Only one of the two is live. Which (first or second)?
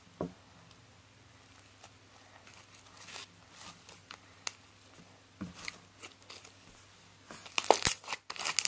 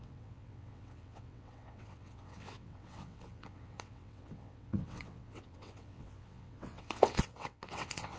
first